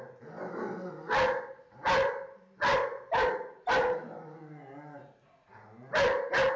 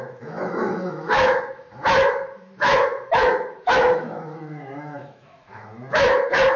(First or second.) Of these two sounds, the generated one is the second